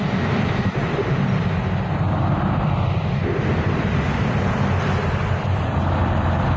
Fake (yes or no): no